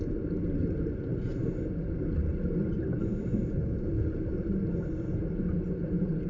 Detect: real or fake real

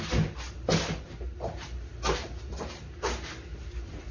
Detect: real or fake real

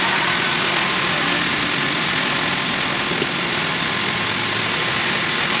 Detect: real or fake real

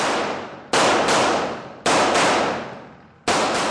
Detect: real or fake real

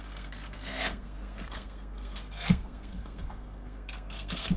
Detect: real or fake fake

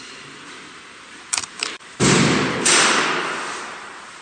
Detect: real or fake fake